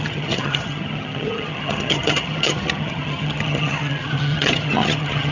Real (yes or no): no